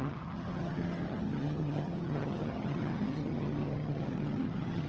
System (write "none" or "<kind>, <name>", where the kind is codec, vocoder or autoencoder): vocoder, HiFi-GAN